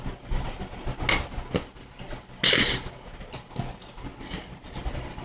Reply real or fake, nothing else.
real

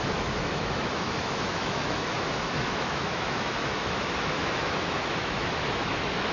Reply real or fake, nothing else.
fake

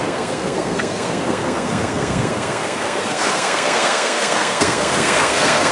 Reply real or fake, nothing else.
fake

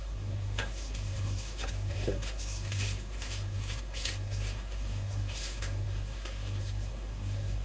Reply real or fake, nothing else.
fake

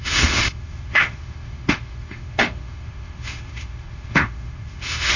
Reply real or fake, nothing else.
fake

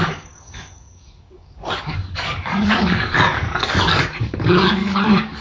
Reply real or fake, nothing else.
fake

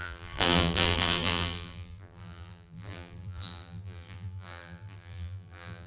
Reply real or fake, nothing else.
fake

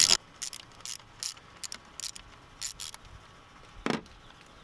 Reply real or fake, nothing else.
real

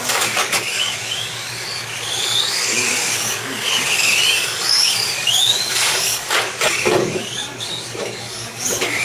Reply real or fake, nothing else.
fake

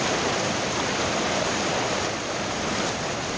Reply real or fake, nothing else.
fake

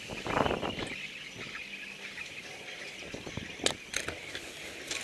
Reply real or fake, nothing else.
real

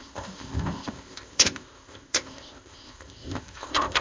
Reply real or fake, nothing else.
fake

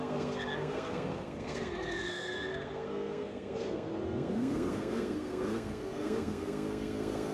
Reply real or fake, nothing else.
fake